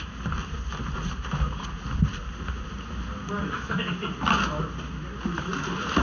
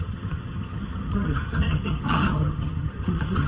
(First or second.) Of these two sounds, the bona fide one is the first